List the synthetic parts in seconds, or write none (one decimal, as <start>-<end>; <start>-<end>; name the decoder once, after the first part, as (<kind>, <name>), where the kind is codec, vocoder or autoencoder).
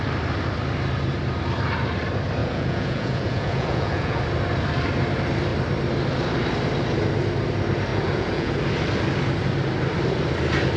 2.4-4.2 (vocoder, Vocos); 7.9-8.5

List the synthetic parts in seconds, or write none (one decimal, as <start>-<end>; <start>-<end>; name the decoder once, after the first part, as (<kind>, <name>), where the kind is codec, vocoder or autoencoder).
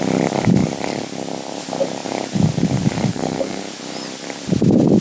3.1-3.6 (codec, SNAC)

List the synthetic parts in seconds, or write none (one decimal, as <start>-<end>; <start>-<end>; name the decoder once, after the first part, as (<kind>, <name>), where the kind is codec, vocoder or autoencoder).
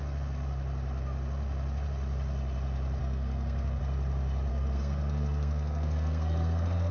3.0-3.8 (codec, SNAC); 4.5-6.9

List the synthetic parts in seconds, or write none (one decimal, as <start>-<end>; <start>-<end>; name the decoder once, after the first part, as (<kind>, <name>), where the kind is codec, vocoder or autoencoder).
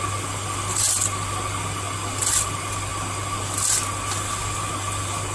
none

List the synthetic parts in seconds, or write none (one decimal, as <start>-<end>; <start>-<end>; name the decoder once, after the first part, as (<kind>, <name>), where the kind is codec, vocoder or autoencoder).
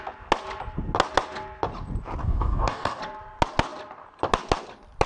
2.2-3.0 (codec, DAC)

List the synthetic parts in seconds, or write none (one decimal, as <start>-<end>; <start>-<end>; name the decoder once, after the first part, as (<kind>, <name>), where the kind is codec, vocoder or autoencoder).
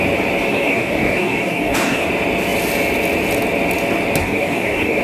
0.5-2.1 (codec, DAC); 4.2-5.0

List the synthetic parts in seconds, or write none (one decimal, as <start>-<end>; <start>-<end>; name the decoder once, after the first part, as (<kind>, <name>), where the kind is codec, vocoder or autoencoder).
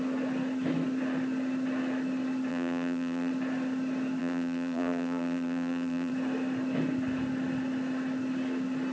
2.5-3.3 (vocoder, BigVGAN v2); 4.2-6.1